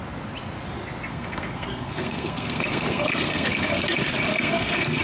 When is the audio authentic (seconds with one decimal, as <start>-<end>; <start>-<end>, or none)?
0.0-1.1; 3.5-4.3